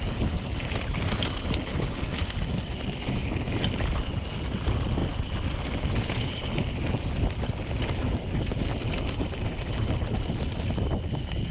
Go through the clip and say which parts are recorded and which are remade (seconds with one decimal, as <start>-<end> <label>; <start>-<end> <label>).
0.0-11.5 recorded